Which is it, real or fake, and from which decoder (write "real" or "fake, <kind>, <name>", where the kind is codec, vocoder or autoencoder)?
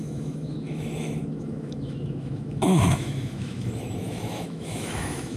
fake, autoencoder, DAC-VAE